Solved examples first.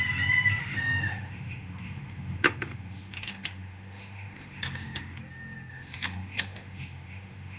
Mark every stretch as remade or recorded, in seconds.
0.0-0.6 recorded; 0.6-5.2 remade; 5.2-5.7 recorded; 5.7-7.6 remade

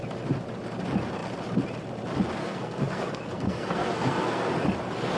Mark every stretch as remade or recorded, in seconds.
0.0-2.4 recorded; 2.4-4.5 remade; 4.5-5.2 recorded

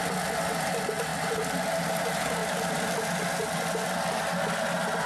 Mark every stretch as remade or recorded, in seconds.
0.0-5.1 recorded

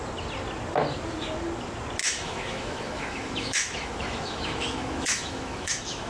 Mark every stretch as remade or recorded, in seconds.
0.0-2.0 recorded; 2.0-6.1 remade

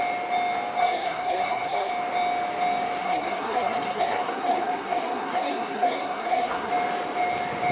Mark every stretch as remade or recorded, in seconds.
0.0-0.8 recorded; 0.8-1.9 remade; 1.9-3.0 recorded; 3.0-6.7 remade; 6.7-7.7 recorded